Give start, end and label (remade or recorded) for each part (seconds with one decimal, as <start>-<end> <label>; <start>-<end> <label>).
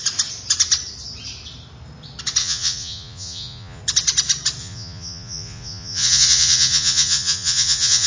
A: 0.0-2.4 recorded; 2.4-3.8 remade; 3.8-4.6 recorded; 4.6-8.1 remade